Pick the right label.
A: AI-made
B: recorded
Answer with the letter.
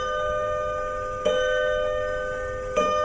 A